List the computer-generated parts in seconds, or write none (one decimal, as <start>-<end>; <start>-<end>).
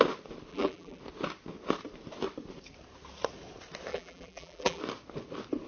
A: 0.5-1.0; 3.9-4.8